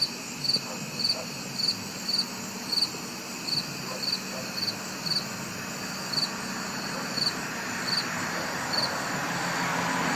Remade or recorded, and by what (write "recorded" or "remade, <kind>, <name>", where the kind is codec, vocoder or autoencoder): recorded